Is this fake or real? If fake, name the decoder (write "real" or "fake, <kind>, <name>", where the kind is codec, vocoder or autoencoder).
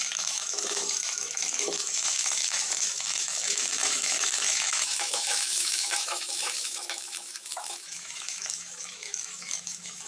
fake, autoencoder, DAC-VAE